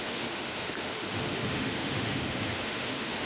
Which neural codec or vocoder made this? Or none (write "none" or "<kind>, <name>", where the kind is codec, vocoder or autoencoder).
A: autoencoder, DAC-VAE